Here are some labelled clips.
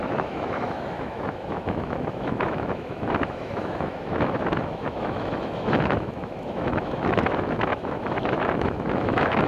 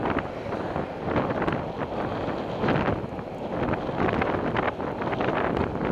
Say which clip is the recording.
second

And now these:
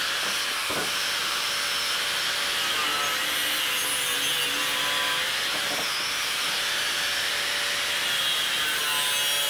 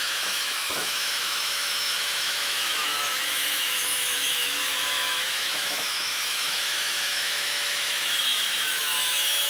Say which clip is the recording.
first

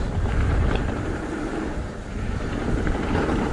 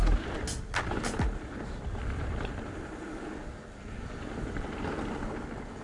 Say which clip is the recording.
second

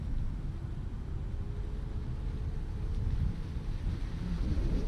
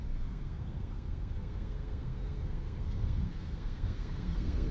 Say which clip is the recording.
first